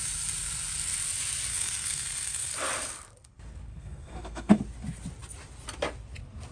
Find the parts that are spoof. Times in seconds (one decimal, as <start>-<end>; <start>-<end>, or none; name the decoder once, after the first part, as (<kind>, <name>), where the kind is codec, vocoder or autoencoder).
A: 1.5-2.5 (codec, SNAC); 3.7-4.6